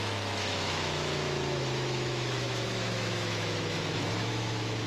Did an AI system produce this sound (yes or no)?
yes